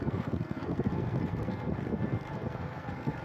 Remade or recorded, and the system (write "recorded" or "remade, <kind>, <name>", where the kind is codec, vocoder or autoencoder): remade, codec, SNAC